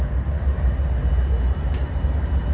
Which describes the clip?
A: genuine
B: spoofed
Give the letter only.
A